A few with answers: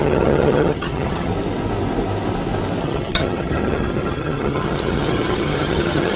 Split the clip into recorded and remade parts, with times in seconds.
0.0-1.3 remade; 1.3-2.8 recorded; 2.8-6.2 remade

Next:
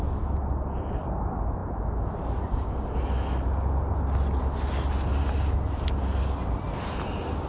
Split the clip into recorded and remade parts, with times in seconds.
0.0-7.5 recorded

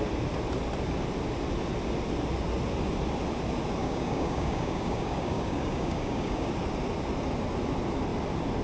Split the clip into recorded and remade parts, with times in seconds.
0.0-3.8 recorded; 3.8-6.5 remade; 6.5-8.6 recorded

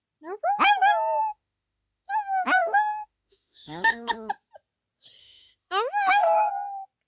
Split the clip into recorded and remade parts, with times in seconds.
0.0-1.2 recorded; 1.2-4.3 remade; 4.3-5.2 recorded; 5.2-6.5 remade; 6.5-7.1 recorded

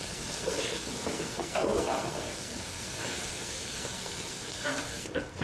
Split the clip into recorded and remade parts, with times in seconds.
0.0-5.4 remade